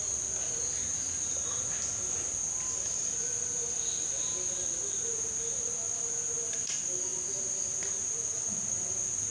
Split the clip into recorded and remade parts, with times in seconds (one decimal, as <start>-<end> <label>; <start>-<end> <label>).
0.0-1.0 recorded; 1.0-4.1 remade; 4.1-9.3 recorded